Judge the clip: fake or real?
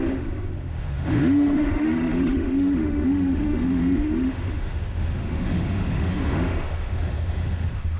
fake